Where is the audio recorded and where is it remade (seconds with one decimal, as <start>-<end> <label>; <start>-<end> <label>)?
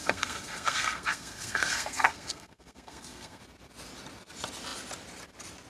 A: 0.0-3.4 remade; 3.4-5.7 recorded